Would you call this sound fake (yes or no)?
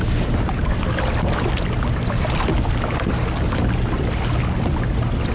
no